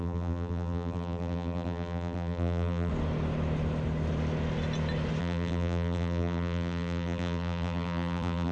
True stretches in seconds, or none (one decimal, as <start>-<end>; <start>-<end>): 2.9-5.2